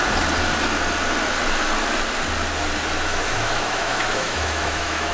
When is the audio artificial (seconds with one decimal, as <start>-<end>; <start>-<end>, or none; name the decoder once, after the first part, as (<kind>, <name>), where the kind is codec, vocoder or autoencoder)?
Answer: 3.1-5.1 (autoencoder, DAC-VAE)